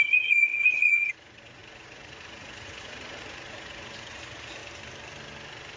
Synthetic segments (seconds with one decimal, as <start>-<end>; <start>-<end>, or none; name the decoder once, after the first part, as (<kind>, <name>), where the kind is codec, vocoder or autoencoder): 0.0-4.6 (vocoder, Vocos)

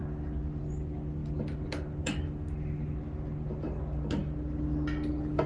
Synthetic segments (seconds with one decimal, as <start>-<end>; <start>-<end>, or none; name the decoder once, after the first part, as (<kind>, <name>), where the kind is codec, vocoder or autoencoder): none

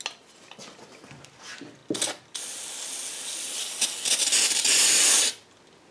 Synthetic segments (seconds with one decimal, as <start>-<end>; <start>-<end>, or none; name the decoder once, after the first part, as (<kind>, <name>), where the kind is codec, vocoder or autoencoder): none